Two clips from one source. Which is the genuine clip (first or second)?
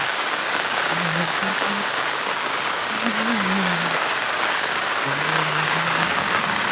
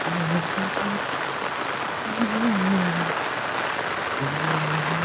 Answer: second